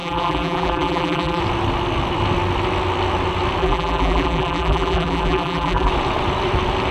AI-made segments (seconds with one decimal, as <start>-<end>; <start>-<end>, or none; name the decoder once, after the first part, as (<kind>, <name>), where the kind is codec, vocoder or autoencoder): 0.0-1.4 (vocoder, BigVGAN v2); 3.6-5.9

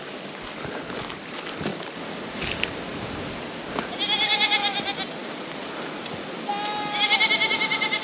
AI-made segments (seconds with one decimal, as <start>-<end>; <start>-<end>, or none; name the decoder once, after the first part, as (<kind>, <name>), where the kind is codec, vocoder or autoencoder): 1.7-2.4 (vocoder, BigVGAN v2); 5.2-6.5